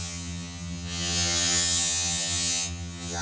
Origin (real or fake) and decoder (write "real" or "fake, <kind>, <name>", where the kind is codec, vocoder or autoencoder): fake, vocoder, HiFi-GAN